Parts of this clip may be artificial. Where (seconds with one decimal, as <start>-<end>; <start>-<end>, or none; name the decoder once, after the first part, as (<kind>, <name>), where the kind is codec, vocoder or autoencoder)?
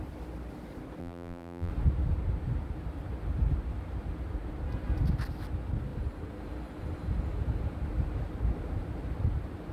1.0-1.7 (vocoder, BigVGAN v2)